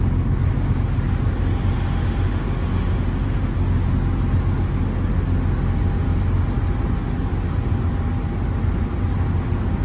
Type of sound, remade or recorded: recorded